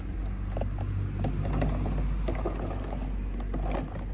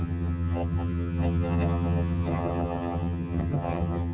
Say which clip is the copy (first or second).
second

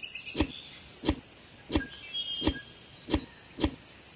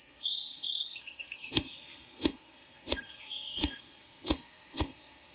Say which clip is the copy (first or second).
second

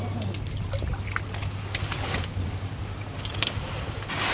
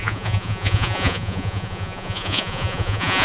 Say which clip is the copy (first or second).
second